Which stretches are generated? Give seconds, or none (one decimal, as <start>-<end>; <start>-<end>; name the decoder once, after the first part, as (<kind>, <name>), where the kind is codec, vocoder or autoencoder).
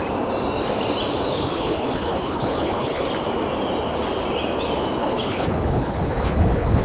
1.3-3.0 (codec, HILCodec); 5.0-6.8